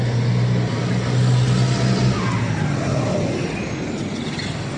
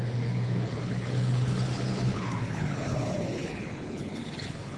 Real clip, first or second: first